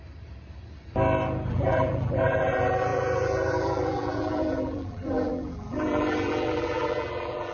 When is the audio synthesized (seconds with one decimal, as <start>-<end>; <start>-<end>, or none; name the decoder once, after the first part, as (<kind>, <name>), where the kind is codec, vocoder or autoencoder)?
1.5-7.5 (vocoder, BigVGAN v2)